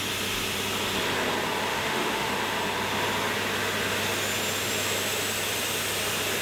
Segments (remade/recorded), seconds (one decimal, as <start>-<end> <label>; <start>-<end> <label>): 0.0-1.7 recorded; 1.7-2.3 remade; 2.3-6.4 recorded